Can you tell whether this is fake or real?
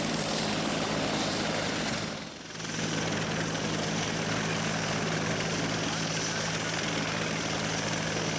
real